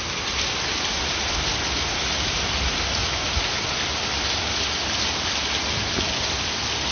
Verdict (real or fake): real